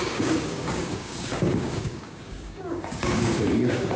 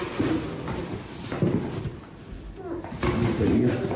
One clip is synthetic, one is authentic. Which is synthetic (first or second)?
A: first